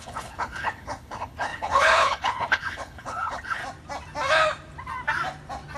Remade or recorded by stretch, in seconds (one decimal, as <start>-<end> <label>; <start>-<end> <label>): 0.0-3.6 remade; 3.6-5.8 recorded